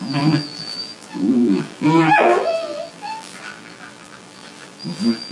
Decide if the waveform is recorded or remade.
remade